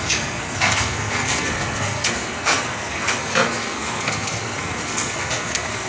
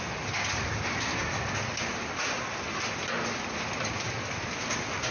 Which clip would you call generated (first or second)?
first